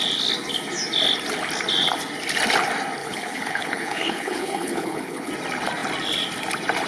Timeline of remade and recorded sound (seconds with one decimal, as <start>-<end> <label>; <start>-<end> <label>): 0.0-3.0 recorded; 3.0-5.3 remade; 5.3-6.9 recorded